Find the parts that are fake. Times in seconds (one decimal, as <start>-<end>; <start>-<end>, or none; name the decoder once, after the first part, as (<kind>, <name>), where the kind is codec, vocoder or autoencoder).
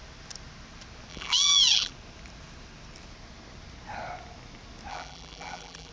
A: 1.1-1.9 (vocoder, BigVGAN v2); 4.9-5.9